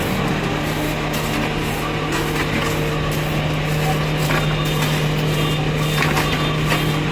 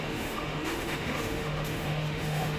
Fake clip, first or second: second